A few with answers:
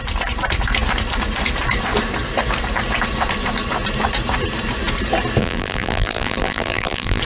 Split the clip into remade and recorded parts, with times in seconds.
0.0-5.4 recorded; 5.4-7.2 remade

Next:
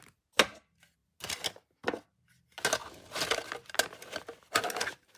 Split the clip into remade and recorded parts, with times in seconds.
0.0-5.2 recorded

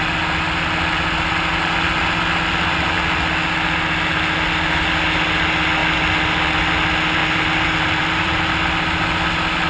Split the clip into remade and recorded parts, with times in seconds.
0.0-7.2 recorded; 7.2-8.4 remade; 8.4-9.7 recorded